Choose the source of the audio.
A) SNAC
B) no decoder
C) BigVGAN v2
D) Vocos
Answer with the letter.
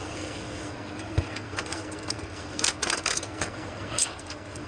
A